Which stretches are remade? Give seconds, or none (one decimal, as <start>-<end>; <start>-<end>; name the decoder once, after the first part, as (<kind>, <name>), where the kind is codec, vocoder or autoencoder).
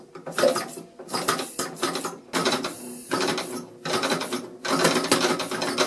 2.4-3.3 (vocoder, BigVGAN v2)